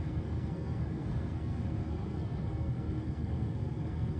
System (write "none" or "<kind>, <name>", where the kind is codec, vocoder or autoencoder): codec, SNAC